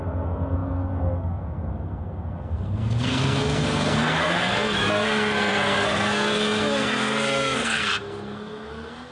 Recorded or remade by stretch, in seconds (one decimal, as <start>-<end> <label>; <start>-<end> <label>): 0.0-9.1 remade